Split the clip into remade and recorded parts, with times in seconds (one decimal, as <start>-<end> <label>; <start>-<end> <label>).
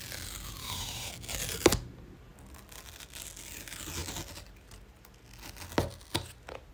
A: 0.0-0.6 recorded; 0.6-1.1 remade; 1.1-6.7 recorded